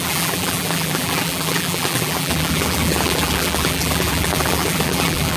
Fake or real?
fake